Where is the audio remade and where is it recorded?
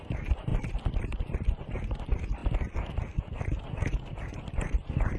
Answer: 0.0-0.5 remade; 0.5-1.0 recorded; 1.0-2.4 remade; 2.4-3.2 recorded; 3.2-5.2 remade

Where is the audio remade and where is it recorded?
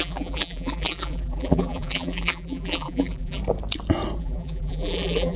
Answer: 0.0-3.4 remade; 3.4-4.2 recorded; 4.2-5.4 remade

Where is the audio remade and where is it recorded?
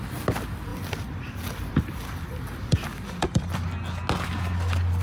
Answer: 0.0-0.7 recorded; 0.7-3.7 remade; 3.7-5.0 recorded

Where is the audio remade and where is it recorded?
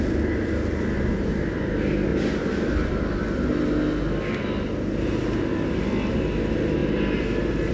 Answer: 0.0-7.7 recorded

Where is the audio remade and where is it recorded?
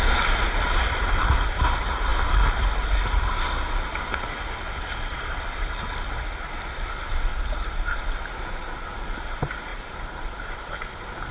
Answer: 0.0-7.3 recorded; 7.3-7.9 remade; 7.9-9.7 recorded; 9.7-10.9 remade; 10.9-11.3 recorded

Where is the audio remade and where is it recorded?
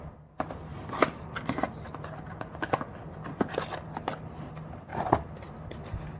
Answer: 0.0-4.9 recorded; 4.9-5.5 remade; 5.5-6.2 recorded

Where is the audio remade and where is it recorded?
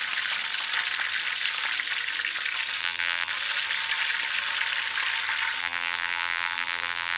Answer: 0.0-2.8 recorded; 2.8-3.3 remade; 3.3-5.6 recorded; 5.6-7.2 remade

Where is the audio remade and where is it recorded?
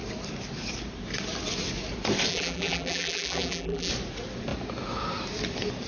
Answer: 0.0-2.3 recorded; 2.3-3.9 remade; 3.9-5.9 recorded